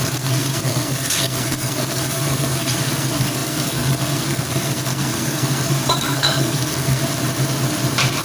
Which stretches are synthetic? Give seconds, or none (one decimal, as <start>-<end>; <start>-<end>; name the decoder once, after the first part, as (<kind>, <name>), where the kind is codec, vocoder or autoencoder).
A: 0.0-7.0 (codec, SNAC)